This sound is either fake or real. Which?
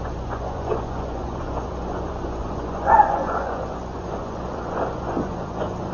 fake